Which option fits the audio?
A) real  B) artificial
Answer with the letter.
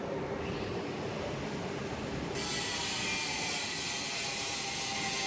A